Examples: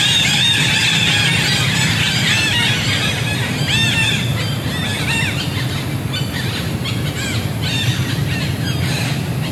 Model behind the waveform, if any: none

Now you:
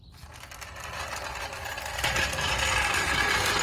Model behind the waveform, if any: none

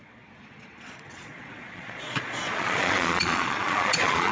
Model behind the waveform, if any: vocoder, Vocos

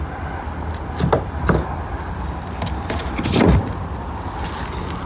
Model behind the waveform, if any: none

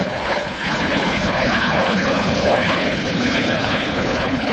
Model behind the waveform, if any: codec, HILCodec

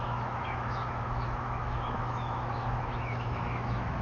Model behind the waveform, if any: autoencoder, DAC-VAE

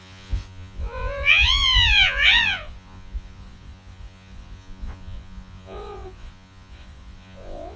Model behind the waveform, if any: vocoder, Vocos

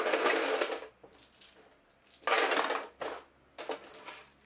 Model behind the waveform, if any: none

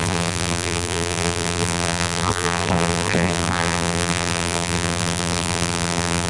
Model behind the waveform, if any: vocoder, BigVGAN v2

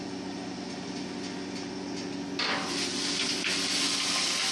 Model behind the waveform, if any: none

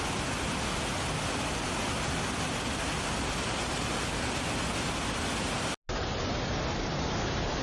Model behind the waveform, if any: none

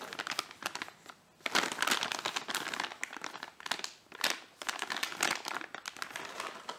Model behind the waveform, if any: none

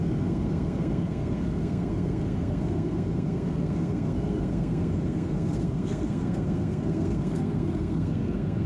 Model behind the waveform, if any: codec, SNAC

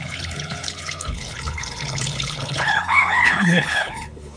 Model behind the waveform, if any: codec, HILCodec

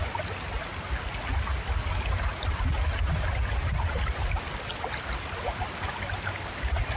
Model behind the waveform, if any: none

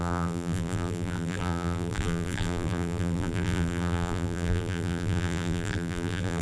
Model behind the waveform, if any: vocoder, BigVGAN v2